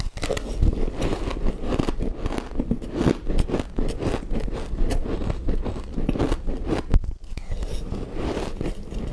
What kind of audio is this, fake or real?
real